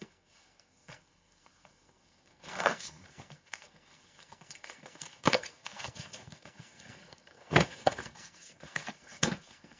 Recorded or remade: remade